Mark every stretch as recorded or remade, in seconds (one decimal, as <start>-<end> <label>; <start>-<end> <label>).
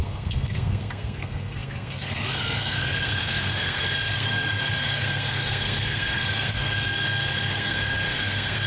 0.0-8.7 remade